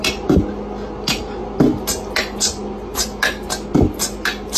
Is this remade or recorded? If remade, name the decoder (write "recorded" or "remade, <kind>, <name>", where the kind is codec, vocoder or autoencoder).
recorded